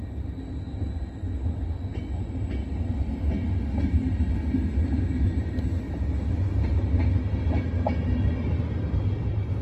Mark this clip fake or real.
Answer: real